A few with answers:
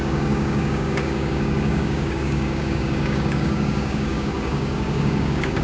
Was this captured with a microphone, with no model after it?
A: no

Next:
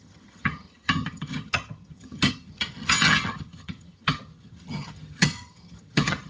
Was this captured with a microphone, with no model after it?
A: no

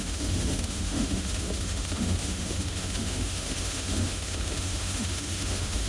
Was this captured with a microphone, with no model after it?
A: no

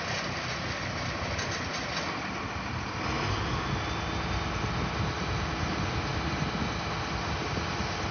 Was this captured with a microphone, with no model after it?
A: yes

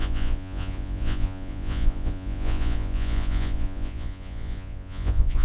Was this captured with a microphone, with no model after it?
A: no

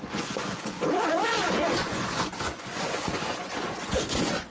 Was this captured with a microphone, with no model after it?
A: no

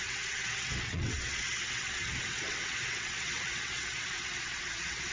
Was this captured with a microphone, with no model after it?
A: no